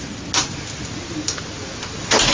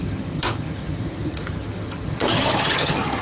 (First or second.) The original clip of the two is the first